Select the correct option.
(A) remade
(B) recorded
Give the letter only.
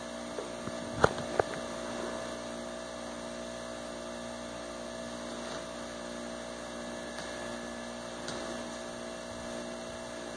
B